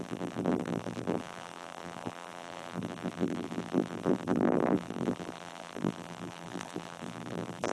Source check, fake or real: fake